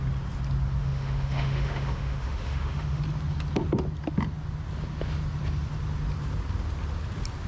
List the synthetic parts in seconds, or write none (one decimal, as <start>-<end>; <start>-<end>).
0.8-3.0